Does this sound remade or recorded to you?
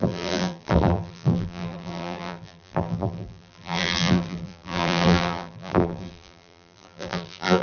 remade